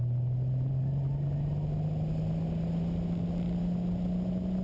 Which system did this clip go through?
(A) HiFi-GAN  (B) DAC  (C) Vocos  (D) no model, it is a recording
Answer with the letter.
D